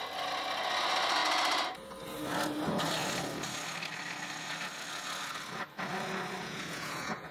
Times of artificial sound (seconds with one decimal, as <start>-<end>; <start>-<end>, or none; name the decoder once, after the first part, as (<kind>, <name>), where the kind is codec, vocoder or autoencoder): 6.4-7.3 (vocoder, Vocos)